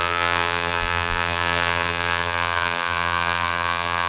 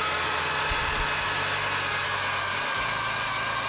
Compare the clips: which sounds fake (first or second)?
first